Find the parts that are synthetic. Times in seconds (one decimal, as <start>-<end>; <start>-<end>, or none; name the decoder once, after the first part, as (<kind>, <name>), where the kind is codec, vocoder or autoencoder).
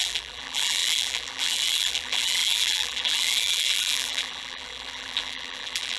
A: 0.0-6.0 (vocoder, BigVGAN v2)